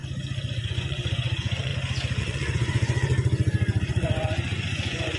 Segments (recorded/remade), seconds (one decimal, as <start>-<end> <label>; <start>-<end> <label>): 0.0-0.7 recorded; 0.7-1.7 remade; 1.7-2.2 recorded; 2.2-3.1 remade; 3.1-3.8 recorded; 3.8-5.2 remade

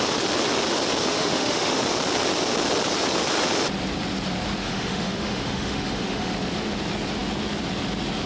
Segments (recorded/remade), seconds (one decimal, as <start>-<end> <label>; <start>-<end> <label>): 0.0-1.1 recorded; 1.1-1.8 remade; 1.8-4.6 recorded; 4.6-6.3 remade; 6.3-8.3 recorded

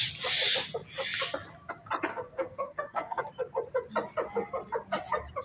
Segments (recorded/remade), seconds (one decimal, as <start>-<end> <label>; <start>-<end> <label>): 0.0-2.1 recorded; 2.1-3.2 remade; 3.2-5.4 recorded

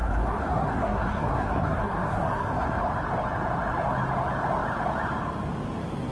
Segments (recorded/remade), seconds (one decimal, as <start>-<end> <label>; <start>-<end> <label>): 0.0-2.8 remade; 2.8-6.1 recorded

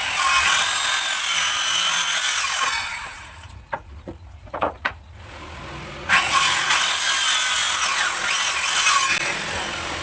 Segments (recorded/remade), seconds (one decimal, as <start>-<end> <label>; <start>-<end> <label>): 0.0-2.9 recorded; 2.9-6.8 remade; 6.8-10.0 recorded

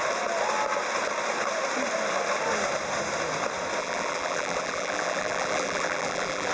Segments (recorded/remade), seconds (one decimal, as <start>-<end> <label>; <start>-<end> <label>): 0.0-3.8 recorded; 3.8-6.5 remade

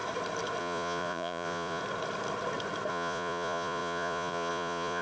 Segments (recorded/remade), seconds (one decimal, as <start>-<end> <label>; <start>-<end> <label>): 0.0-0.6 recorded; 0.6-1.8 remade; 1.8-2.9 recorded; 2.9-5.0 remade

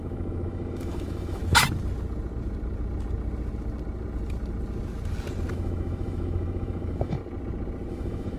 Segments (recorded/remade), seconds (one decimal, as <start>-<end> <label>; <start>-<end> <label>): 0.0-1.4 remade; 1.4-5.5 recorded; 5.5-7.2 remade; 7.2-7.9 recorded; 7.9-8.4 remade